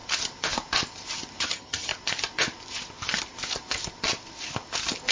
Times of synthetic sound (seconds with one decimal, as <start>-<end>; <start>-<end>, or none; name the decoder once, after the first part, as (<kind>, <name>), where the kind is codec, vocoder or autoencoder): 1.4-1.9 (vocoder, HiFi-GAN)

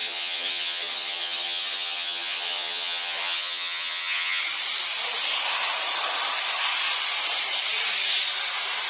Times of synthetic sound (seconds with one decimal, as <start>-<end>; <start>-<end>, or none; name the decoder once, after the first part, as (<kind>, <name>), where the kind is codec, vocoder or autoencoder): 0.0-4.4 (vocoder, HiFi-GAN)

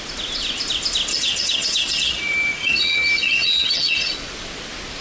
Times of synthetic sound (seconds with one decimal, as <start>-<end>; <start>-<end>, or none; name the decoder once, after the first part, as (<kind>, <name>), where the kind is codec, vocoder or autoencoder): 1.1-4.1 (vocoder, HiFi-GAN)

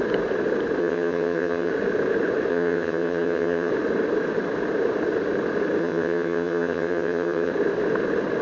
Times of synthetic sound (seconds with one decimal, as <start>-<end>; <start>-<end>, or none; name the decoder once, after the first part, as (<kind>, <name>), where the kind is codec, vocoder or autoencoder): 0.8-1.7 (vocoder, HiFi-GAN); 2.5-3.7; 5.8-7.5

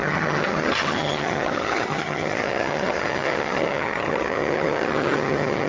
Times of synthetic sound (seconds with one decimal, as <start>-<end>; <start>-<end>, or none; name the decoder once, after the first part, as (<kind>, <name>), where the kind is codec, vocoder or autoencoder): 0.0-5.7 (vocoder, HiFi-GAN)

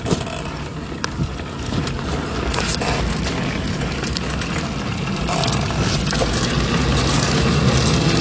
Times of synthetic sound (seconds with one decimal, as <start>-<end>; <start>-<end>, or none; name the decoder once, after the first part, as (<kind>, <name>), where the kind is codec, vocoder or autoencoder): none

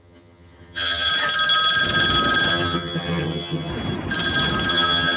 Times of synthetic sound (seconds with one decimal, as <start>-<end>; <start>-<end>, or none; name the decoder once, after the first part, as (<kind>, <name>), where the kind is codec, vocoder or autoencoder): 0.0-1.1 (vocoder, HiFi-GAN); 2.5-3.7; 4.7-5.2

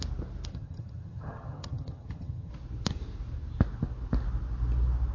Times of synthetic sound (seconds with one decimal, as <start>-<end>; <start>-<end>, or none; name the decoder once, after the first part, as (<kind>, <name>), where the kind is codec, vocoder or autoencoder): 0.5-2.5 (vocoder, HiFi-GAN)